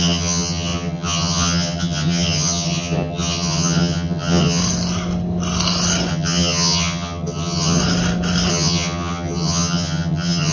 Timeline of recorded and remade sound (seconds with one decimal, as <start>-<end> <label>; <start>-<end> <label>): 0.0-4.6 remade; 4.6-6.1 recorded; 6.1-7.8 remade; 7.8-8.5 recorded; 8.5-10.5 remade

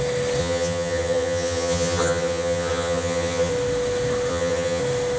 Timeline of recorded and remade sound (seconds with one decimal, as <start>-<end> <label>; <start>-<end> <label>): 0.0-0.4 recorded; 0.4-3.5 remade; 3.5-4.3 recorded; 4.3-4.8 remade; 4.8-5.2 recorded

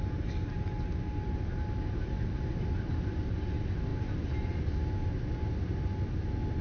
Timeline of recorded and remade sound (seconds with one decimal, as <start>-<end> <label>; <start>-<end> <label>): 0.0-6.6 recorded

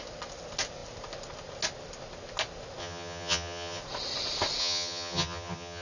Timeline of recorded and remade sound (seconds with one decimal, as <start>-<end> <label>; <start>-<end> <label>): 0.0-2.8 recorded; 2.8-3.8 remade; 3.8-4.6 recorded; 4.6-5.8 remade

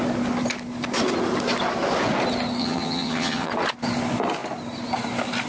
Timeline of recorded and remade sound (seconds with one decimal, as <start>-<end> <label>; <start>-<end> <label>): 0.0-2.6 recorded; 2.6-3.5 remade; 3.5-5.5 recorded

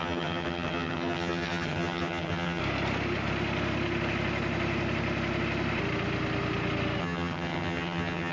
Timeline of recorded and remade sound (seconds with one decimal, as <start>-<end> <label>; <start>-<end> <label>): 0.0-2.6 remade; 2.6-7.0 recorded; 7.0-8.3 remade

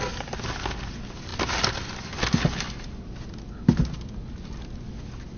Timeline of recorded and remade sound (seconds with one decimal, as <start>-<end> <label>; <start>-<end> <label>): 0.0-5.4 recorded